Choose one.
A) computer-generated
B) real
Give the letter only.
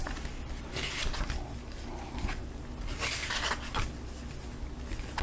B